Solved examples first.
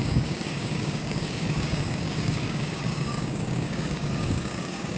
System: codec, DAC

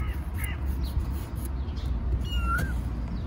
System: none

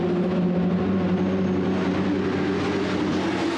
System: none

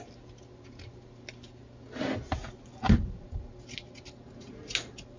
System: none